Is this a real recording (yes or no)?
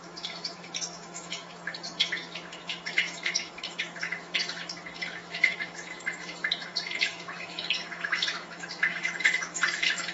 no